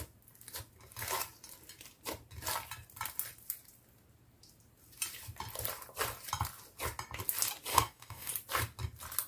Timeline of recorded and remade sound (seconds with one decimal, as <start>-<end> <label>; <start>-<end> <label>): 0.0-7.7 recorded; 7.7-8.3 remade; 8.3-9.3 recorded